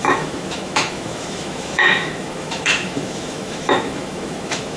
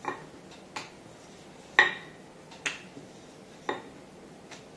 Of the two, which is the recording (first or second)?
second